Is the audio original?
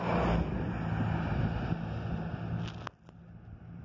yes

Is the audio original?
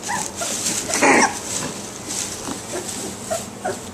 yes